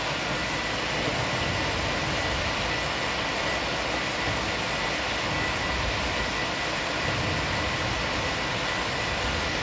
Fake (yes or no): no